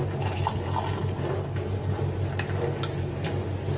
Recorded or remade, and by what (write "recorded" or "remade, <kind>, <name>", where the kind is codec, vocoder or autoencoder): recorded